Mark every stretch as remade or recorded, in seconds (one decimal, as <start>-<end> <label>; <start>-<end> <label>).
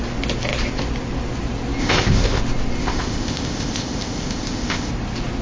0.0-1.8 recorded; 1.8-2.4 remade; 2.4-2.8 recorded; 2.8-4.9 remade; 4.9-5.4 recorded